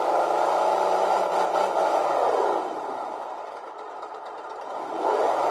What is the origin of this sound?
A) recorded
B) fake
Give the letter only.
B